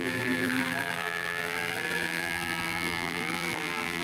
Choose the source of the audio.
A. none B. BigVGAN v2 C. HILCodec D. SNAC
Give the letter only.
B